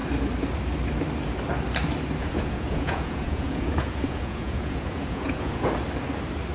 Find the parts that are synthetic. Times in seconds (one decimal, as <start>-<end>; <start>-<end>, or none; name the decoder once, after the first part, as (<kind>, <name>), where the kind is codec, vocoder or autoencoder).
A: 2.2-5.7 (vocoder, Vocos)